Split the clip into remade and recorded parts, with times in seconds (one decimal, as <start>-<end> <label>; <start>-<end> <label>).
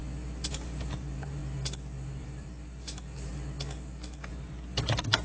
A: 0.0-0.5 recorded; 0.5-1.4 remade; 1.4-2.2 recorded; 2.2-3.3 remade; 3.3-4.3 recorded; 4.3-5.2 remade